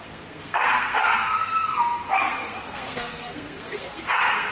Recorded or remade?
remade